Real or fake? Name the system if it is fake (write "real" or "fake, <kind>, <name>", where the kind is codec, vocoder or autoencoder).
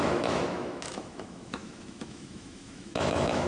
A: fake, autoencoder, DAC-VAE